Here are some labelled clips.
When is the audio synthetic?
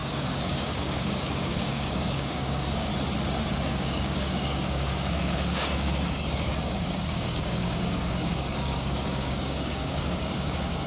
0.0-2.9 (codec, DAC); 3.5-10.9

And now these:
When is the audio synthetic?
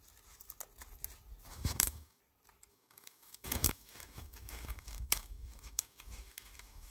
1.5-2.2 (codec, DAC); 2.7-6.9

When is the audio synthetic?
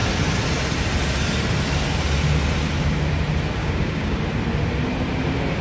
3.6-4.2 (codec, DAC)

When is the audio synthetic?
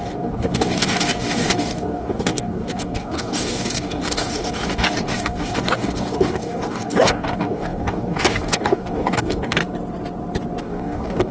0.0-9.6 (codec, DAC); 10.6-11.3